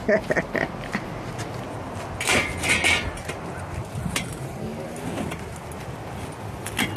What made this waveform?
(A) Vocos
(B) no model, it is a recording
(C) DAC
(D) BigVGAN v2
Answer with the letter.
B